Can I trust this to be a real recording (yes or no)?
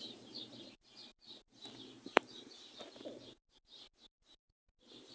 no